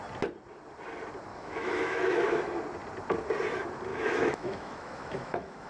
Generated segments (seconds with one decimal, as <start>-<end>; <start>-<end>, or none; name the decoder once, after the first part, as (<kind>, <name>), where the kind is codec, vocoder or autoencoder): 1.3-2.4 (autoencoder, DAC-VAE); 3.9-5.7